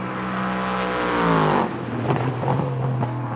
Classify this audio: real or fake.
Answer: real